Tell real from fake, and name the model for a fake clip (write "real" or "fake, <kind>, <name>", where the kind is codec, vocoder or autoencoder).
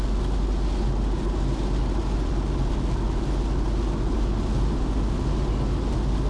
real